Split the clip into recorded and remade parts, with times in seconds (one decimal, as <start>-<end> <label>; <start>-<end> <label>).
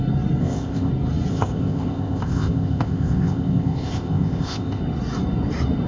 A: 0.0-0.4 recorded; 0.4-0.9 remade; 0.9-1.3 recorded; 1.3-4.8 remade; 4.8-5.9 recorded